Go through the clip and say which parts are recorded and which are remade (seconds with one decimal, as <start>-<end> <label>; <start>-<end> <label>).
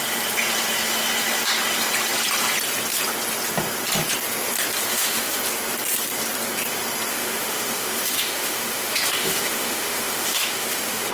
0.0-4.9 recorded; 4.9-5.4 remade; 5.4-7.1 recorded; 7.1-11.1 remade